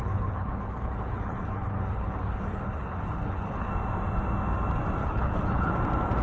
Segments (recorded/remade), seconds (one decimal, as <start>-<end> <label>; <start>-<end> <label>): 0.0-3.7 remade; 3.7-5.0 recorded; 5.0-5.7 remade; 5.7-6.2 recorded